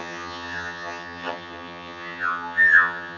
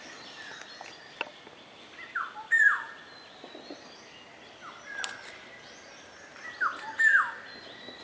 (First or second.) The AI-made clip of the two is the first